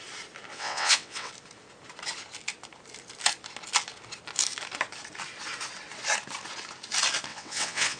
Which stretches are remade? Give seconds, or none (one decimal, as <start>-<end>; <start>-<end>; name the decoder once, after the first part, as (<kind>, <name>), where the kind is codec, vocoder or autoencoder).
0.5-1.3 (vocoder, WaveNeXt); 7.3-8.0